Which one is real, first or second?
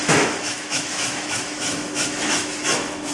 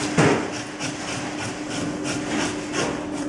second